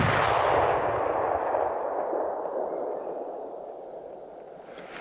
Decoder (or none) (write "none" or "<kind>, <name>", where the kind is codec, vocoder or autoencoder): none